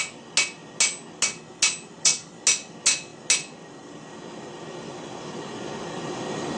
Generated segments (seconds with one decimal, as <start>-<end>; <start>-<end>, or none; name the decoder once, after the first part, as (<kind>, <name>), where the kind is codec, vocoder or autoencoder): none